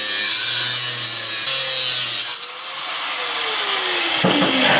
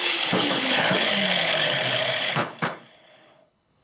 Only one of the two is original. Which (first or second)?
first